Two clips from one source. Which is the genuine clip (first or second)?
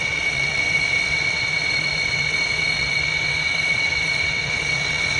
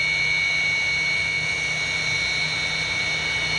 second